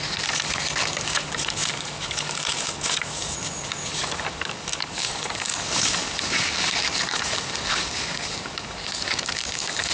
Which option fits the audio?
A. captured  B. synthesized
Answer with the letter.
B